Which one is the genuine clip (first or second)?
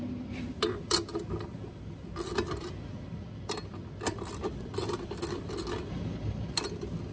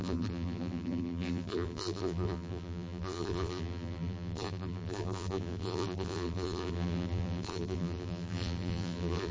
first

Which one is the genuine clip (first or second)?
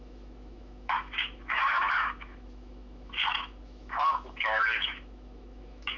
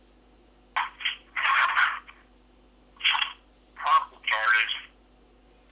second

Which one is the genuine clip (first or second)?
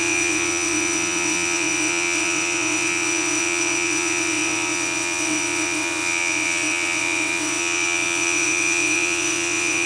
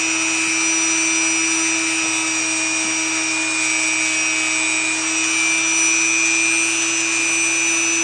second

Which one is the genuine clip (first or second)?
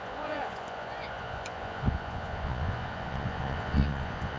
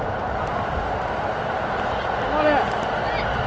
second